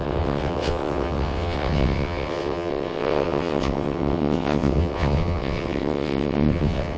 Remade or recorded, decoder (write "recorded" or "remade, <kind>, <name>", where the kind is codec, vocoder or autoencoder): remade, vocoder, WaveNeXt